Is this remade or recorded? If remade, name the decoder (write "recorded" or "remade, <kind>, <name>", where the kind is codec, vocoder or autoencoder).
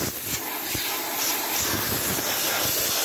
recorded